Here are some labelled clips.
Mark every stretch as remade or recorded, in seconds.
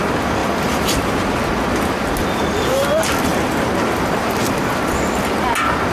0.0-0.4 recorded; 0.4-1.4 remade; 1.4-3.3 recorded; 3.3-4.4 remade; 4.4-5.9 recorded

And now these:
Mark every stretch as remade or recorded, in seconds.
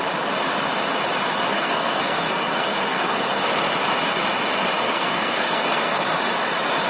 0.0-1.5 recorded; 1.5-3.4 remade; 3.4-4.8 recorded; 4.8-6.0 remade; 6.0-6.9 recorded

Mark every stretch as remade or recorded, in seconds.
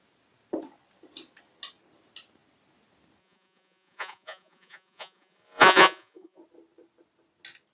0.0-3.2 recorded; 3.2-6.4 remade; 6.4-7.7 recorded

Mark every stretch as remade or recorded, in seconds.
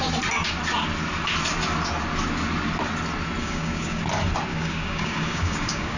0.0-3.4 recorded; 3.4-4.0 remade; 4.0-4.5 recorded; 4.5-6.0 remade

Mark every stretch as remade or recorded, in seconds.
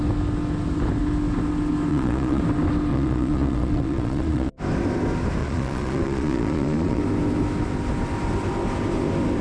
0.0-1.9 recorded; 1.9-2.4 remade; 2.4-2.9 recorded; 2.9-4.5 remade; 4.5-5.4 recorded; 5.4-7.0 remade; 7.0-9.4 recorded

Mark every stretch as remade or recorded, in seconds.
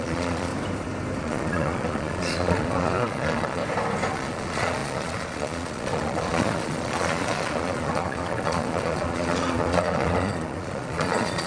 0.0-0.5 remade; 0.5-1.2 recorded; 1.2-3.6 remade; 3.6-4.1 recorded; 4.1-11.5 remade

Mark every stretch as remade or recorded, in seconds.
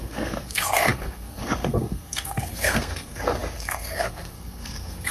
0.0-5.1 remade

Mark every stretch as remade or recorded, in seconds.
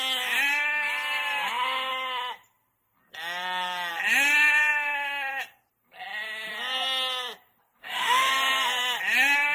0.0-7.8 recorded; 7.8-8.3 remade; 8.3-9.5 recorded